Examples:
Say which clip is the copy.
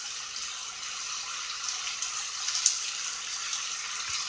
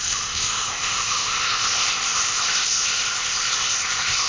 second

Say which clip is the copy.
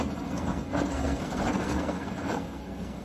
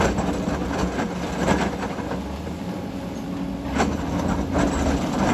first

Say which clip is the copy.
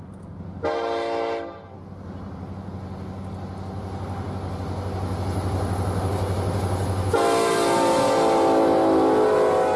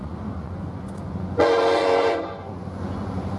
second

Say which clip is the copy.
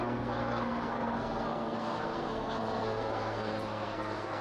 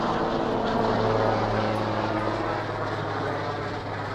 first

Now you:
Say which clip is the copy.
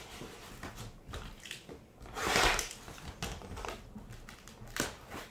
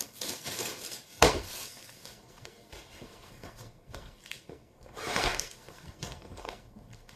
second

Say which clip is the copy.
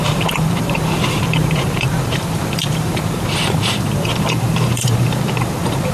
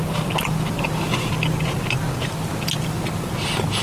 first